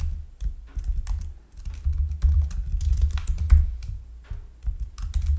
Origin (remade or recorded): recorded